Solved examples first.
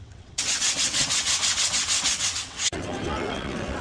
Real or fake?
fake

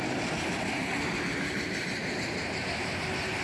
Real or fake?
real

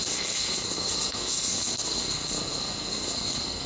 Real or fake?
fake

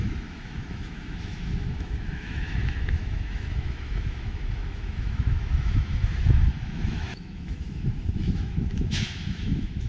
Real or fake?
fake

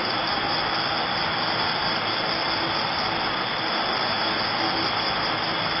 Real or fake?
fake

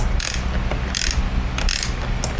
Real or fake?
real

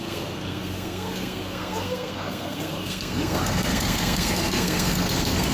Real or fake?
fake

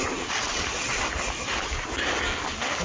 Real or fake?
real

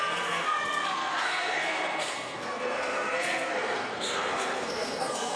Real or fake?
fake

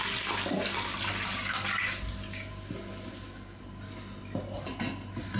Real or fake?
real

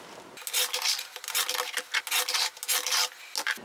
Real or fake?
real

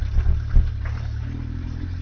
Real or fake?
real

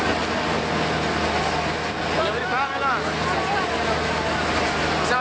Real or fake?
real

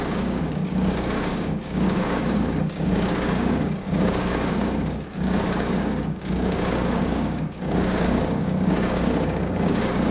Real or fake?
fake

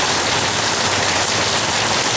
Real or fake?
fake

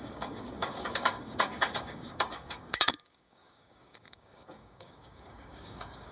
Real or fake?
fake